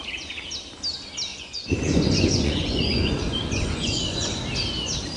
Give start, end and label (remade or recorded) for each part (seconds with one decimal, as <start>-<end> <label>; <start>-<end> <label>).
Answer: 0.0-1.3 recorded; 1.3-4.4 remade; 4.4-5.2 recorded